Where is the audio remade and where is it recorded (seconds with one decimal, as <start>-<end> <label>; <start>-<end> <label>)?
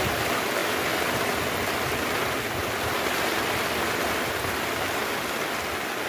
0.0-6.1 recorded